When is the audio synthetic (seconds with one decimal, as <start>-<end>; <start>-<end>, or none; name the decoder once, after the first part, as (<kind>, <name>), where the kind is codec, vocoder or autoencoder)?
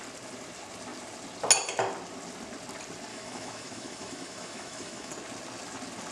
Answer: 3.1-5.1 (autoencoder, DAC-VAE)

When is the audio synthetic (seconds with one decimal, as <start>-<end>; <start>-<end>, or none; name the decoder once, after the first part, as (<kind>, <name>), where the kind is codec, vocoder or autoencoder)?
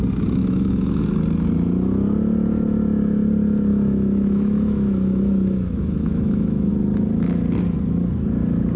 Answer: 0.4-1.0 (autoencoder, DAC-VAE); 3.7-6.7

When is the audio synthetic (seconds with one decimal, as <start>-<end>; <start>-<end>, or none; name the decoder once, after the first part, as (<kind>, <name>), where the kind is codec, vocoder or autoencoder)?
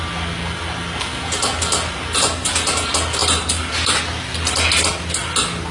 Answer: none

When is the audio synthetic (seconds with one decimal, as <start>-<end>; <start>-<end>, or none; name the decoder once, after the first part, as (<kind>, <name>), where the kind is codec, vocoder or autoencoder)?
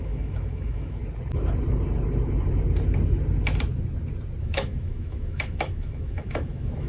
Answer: 0.0-1.0 (autoencoder, DAC-VAE); 4.4-6.9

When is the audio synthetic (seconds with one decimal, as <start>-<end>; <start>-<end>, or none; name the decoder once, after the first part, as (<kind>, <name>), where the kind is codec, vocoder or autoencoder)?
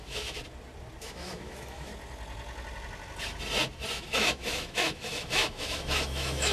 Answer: 0.0-0.4 (autoencoder, DAC-VAE); 1.0-1.9; 3.9-6.5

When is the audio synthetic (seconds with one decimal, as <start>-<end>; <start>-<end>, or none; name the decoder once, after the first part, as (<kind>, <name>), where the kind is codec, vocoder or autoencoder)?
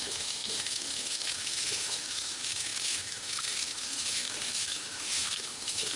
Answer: 0.0-6.0 (autoencoder, DAC-VAE)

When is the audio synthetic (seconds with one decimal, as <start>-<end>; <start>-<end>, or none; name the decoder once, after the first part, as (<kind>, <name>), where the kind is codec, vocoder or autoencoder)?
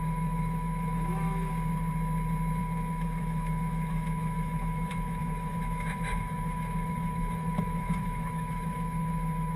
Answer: 0.0-1.5 (autoencoder, DAC-VAE); 2.6-9.6